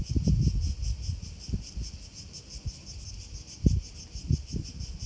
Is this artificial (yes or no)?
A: no